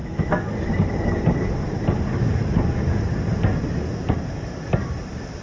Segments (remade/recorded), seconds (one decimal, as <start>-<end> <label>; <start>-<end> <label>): 0.0-0.5 remade; 0.5-5.4 recorded